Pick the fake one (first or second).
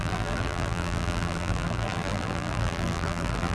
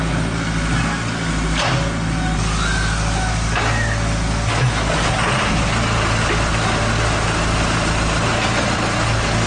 first